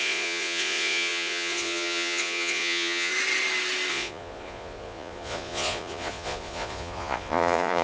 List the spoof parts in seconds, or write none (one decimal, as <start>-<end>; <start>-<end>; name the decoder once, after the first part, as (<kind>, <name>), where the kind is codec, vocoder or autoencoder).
0.0-3.1 (vocoder, Vocos); 3.9-7.8